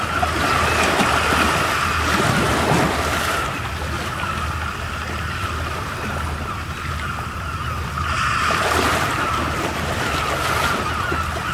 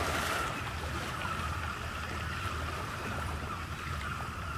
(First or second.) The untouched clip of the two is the first